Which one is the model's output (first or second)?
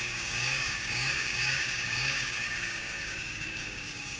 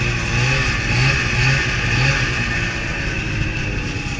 first